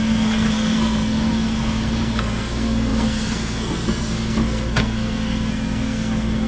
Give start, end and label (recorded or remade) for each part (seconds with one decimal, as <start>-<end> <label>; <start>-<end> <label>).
0.0-6.5 remade